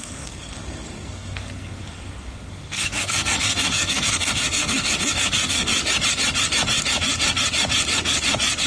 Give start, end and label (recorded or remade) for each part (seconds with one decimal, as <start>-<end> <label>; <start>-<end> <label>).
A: 0.0-5.7 remade; 5.7-8.7 recorded